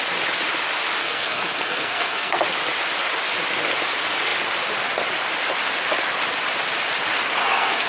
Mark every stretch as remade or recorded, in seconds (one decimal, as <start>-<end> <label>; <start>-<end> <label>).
0.0-1.0 recorded; 1.0-2.4 remade; 2.4-7.4 recorded; 7.4-7.9 remade